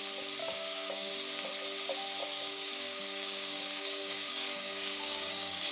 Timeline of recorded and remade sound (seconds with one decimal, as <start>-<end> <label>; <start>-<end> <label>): 0.0-0.4 recorded; 0.4-1.1 remade; 1.1-2.2 recorded; 2.2-5.7 remade